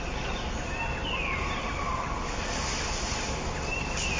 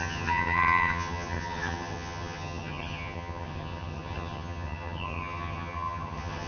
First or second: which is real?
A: first